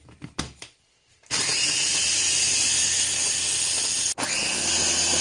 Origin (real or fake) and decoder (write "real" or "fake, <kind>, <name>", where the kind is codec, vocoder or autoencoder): real